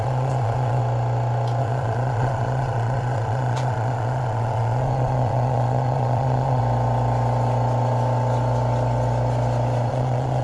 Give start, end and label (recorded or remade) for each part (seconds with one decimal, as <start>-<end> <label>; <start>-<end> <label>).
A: 0.0-0.8 remade; 0.8-1.6 recorded; 1.6-6.6 remade; 6.6-9.9 recorded; 9.9-10.4 remade